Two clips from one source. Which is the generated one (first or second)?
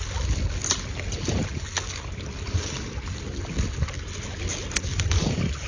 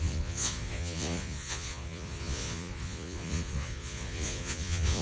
second